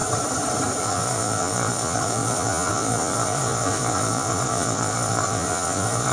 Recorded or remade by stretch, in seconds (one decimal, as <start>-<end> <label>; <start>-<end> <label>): 0.0-0.8 recorded; 0.8-6.1 remade